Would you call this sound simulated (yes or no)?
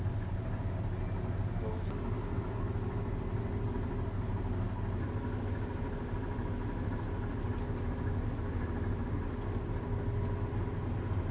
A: no